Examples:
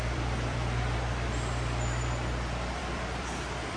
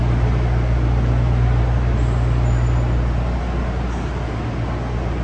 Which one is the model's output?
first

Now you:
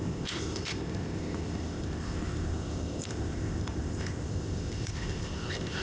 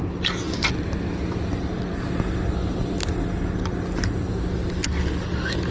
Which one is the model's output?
first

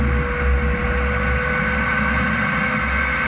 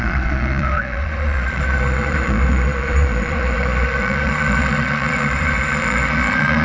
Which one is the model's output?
second